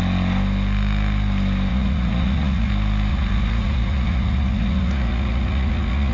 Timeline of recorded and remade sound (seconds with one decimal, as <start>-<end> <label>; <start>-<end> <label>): 0.0-1.7 recorded; 1.7-2.7 remade; 2.7-3.1 recorded; 3.1-6.1 remade